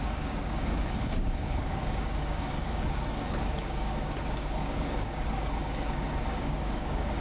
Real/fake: fake